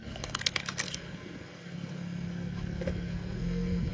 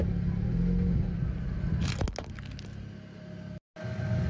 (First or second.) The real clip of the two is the second